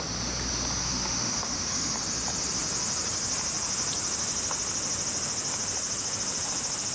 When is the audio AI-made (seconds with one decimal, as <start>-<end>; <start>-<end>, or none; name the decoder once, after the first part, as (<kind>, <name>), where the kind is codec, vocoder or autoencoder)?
0.8-1.9 (autoencoder, DAC-VAE)